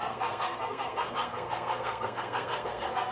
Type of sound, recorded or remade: remade